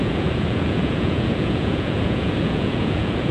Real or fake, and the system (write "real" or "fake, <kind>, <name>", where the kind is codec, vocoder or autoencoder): fake, vocoder, Vocos